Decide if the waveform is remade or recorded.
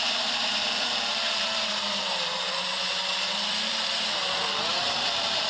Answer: remade